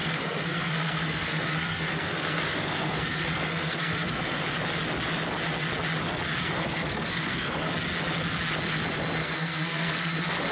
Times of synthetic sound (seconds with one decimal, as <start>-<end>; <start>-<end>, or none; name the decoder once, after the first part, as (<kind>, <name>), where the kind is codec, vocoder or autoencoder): 0.0-4.4 (codec, SNAC); 6.4-7.7; 9.2-10.1